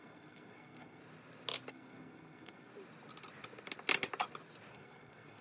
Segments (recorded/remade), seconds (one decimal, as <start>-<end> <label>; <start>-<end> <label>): 0.0-1.0 remade; 1.0-1.7 recorded; 1.7-2.7 remade; 2.7-4.7 recorded; 4.7-5.4 remade